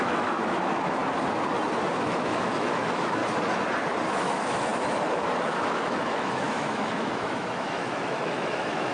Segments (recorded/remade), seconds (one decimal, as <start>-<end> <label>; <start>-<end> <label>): 0.0-1.0 remade; 1.0-2.0 recorded; 2.0-3.2 remade; 3.2-4.1 recorded; 4.1-8.9 remade